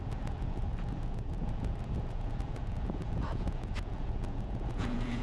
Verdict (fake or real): fake